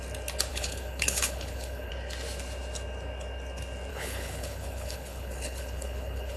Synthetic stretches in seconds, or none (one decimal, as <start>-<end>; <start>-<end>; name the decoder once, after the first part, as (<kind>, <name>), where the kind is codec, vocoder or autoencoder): 0.5-1.9 (codec, HILCodec); 3.9-6.4